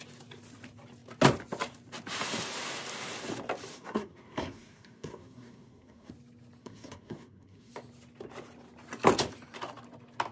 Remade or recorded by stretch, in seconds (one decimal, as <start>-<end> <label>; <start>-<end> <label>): 0.0-3.7 recorded; 3.7-6.1 remade; 6.1-6.6 recorded; 6.6-7.7 remade; 7.7-10.3 recorded

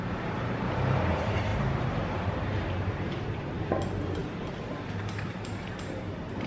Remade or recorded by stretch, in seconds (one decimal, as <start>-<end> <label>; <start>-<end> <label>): 0.0-4.2 remade; 4.2-5.8 recorded; 5.8-6.5 remade